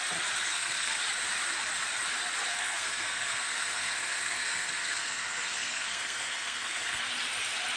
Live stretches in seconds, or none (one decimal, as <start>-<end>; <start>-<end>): 0.0-0.5; 1.0-2.5; 7.0-7.8